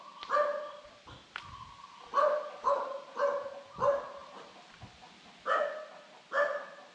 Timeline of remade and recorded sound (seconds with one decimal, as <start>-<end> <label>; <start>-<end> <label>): 0.0-6.9 recorded